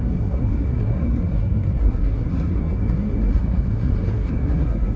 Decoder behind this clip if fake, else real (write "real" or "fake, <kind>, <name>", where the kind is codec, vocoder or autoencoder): fake, codec, SNAC